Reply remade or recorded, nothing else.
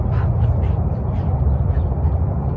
recorded